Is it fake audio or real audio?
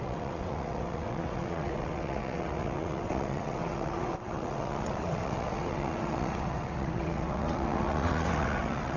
fake